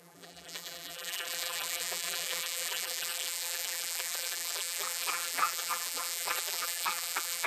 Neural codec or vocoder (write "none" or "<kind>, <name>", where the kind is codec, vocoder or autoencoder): vocoder, BigVGAN v2